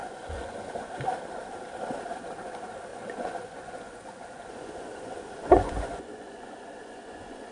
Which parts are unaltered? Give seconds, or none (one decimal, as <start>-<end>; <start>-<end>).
0.9-2.9